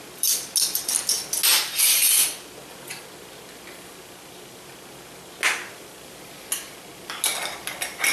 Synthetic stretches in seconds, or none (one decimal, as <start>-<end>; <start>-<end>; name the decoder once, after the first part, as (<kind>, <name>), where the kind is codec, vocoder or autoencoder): none